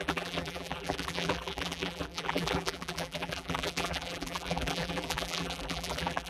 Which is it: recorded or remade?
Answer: remade